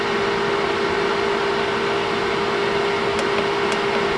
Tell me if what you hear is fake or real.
real